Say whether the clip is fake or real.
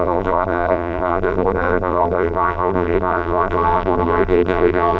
fake